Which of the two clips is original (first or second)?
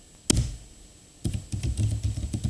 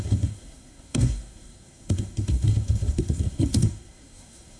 first